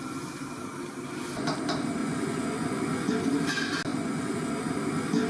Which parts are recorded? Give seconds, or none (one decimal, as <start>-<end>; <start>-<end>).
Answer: 0.0-2.0; 3.1-3.9; 4.4-5.3